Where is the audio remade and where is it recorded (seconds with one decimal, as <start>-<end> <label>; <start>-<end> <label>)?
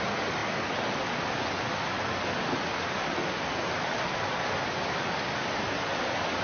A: 0.0-6.4 recorded